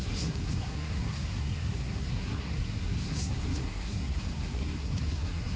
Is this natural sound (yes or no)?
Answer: no